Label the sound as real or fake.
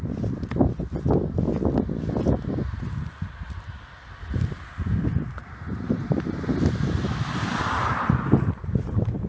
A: real